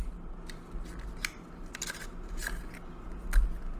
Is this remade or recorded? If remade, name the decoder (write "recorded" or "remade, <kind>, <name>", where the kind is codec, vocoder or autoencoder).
recorded